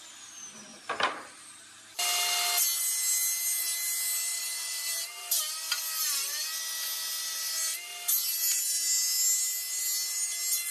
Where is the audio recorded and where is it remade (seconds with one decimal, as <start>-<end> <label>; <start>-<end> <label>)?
0.0-0.7 recorded; 0.7-1.9 remade; 1.9-4.3 recorded; 4.3-5.4 remade; 5.4-10.7 recorded